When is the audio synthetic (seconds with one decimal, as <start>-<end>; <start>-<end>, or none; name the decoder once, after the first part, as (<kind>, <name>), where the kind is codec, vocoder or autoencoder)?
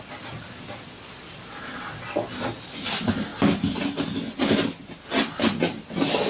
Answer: none